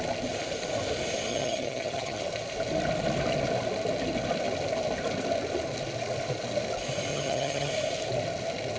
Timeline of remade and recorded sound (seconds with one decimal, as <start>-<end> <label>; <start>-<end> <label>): 0.0-1.3 recorded; 1.3-2.2 remade; 2.2-7.1 recorded; 7.1-7.7 remade; 7.7-8.8 recorded